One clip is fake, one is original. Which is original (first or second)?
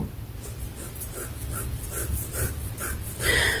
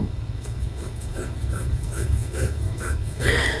first